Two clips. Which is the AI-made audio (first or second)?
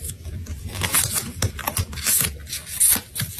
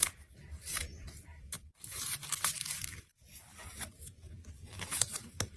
second